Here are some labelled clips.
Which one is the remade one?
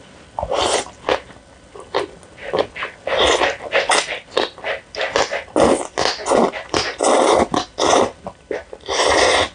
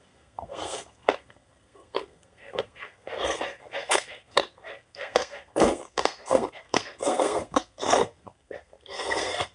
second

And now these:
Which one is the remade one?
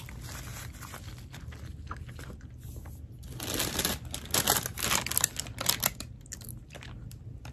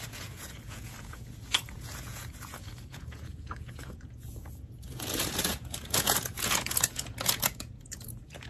second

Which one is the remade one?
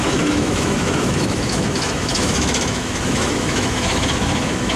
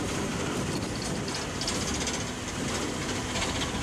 first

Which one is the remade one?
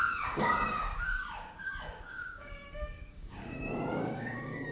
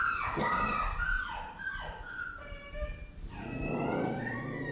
first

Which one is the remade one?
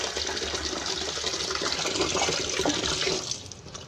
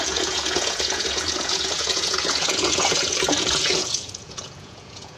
second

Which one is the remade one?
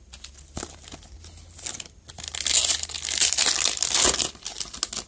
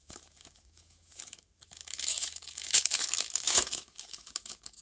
second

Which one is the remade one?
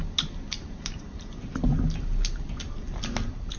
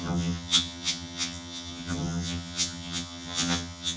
second